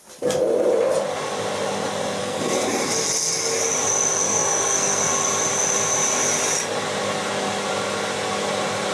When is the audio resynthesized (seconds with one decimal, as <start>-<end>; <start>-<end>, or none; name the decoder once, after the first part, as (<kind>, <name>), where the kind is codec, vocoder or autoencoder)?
2.2-2.9 (codec, SNAC); 4.1-5.1